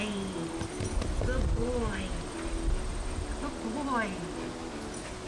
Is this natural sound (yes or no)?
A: yes